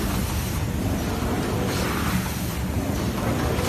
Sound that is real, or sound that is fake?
fake